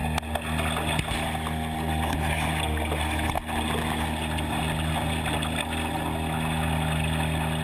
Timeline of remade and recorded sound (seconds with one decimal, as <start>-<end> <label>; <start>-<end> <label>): 0.0-7.6 recorded